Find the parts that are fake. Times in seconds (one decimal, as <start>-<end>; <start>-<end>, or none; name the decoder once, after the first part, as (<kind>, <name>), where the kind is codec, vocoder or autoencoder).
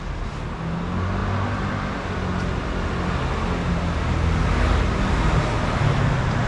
none